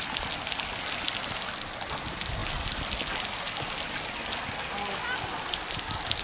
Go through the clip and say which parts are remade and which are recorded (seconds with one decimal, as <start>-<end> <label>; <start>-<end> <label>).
0.0-6.2 recorded